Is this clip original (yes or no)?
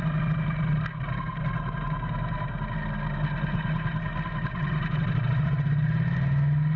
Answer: yes